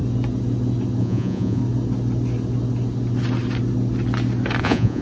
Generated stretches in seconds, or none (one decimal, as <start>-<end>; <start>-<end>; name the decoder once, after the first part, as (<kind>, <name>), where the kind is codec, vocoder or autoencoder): 1.0-1.6 (vocoder, Vocos); 4.6-5.0